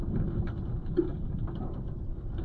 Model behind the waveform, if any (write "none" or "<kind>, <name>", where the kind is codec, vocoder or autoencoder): none